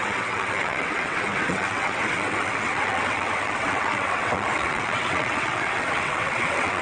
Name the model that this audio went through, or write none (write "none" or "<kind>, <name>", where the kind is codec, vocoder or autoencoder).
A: vocoder, WaveNeXt